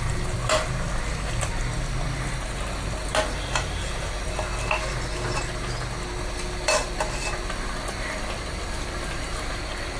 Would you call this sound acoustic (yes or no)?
yes